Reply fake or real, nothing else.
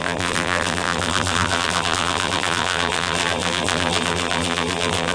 fake